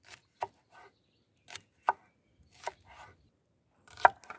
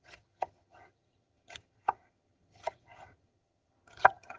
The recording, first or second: first